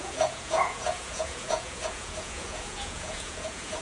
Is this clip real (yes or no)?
no